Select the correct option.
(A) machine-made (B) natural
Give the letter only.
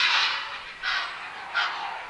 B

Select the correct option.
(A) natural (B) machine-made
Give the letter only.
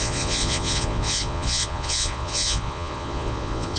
B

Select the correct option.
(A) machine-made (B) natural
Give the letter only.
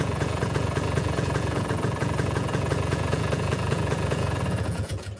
A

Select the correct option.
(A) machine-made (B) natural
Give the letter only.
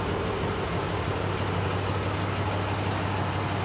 B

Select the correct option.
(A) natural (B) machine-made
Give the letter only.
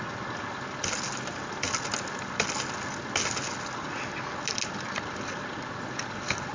A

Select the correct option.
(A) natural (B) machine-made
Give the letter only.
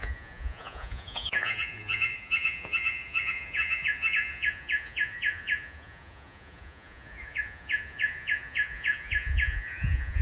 B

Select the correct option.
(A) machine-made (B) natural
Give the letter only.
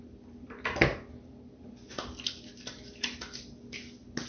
B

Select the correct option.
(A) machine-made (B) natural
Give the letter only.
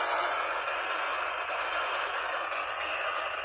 A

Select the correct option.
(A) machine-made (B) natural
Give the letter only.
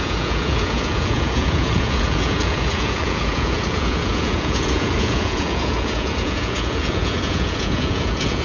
A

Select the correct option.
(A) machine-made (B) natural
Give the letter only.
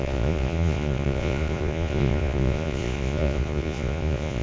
A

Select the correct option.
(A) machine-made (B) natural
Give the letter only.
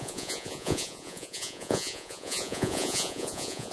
A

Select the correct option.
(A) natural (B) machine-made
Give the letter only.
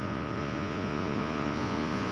B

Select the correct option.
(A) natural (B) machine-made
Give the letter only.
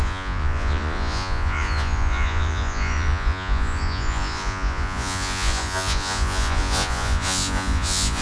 B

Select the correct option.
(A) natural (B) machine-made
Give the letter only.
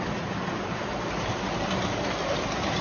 A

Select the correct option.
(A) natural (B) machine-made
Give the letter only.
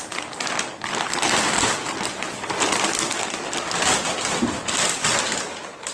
A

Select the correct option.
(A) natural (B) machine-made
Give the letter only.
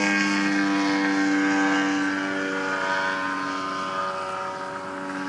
A